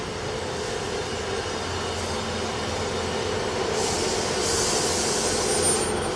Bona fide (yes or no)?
yes